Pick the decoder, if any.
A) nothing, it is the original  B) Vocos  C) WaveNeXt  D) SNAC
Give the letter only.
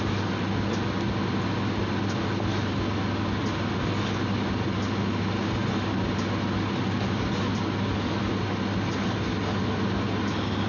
A